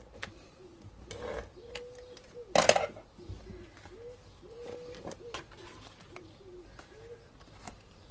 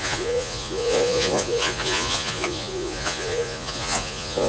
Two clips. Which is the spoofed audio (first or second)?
second